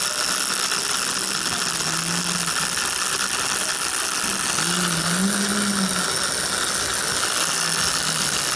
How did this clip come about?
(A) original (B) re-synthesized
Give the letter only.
A